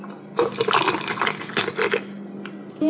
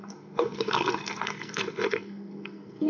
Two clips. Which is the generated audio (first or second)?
second